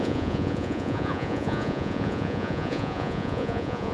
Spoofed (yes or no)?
yes